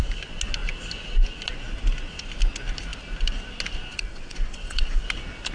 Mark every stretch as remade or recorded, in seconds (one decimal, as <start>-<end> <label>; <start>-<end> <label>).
0.0-3.9 recorded; 3.9-5.0 remade; 5.0-5.5 recorded